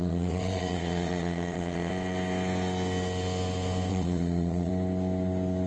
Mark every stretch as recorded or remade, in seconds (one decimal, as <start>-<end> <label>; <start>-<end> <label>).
0.0-1.9 remade; 1.9-3.9 recorded; 3.9-4.7 remade; 4.7-5.7 recorded

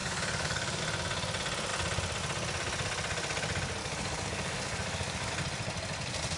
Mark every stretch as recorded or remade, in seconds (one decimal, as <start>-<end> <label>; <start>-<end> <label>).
0.0-0.8 remade; 0.8-3.8 recorded; 3.8-5.3 remade; 5.3-6.4 recorded

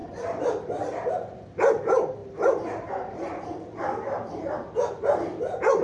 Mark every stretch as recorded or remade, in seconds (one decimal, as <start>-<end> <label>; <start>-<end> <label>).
0.0-1.1 remade; 1.1-2.2 recorded; 2.2-5.8 remade